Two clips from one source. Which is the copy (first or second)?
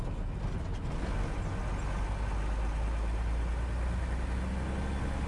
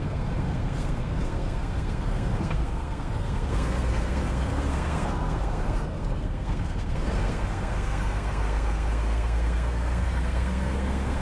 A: second